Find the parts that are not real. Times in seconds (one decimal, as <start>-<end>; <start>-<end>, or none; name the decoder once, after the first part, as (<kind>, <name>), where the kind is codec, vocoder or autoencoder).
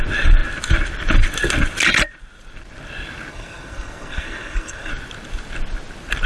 3.3-4.9 (codec, SNAC)